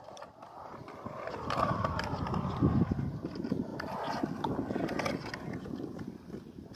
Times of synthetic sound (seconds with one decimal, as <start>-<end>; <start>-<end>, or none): 0.0-3.7; 6.0-6.8